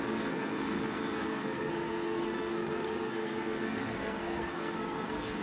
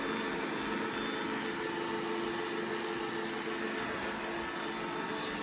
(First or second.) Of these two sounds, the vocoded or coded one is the first